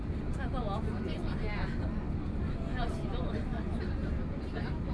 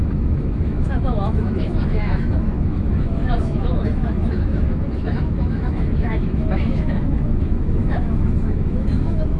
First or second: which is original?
first